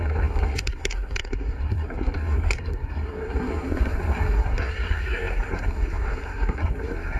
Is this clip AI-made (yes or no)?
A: yes